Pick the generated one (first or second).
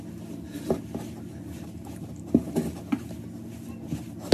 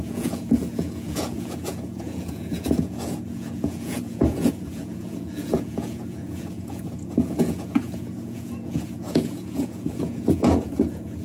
second